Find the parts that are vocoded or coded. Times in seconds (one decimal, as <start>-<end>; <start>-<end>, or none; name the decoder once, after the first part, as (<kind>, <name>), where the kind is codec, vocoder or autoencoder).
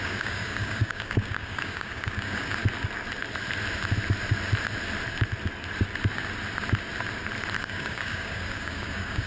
0.0-2.6 (codec, DAC); 7.6-9.3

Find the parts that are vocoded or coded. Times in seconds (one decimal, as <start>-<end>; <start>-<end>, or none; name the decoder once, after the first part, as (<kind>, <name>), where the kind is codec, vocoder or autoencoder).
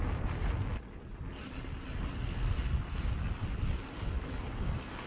none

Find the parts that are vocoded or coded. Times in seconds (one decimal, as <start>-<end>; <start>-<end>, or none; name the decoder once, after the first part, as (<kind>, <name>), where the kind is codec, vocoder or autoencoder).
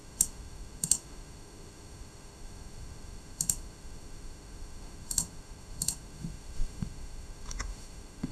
0.0-8.3 (autoencoder, DAC-VAE)